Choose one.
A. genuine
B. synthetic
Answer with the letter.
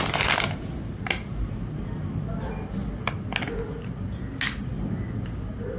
A